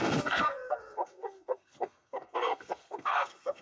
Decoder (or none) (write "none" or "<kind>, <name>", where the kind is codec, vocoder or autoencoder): codec, SNAC